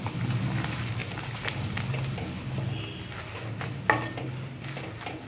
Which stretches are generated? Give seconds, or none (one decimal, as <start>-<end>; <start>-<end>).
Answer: none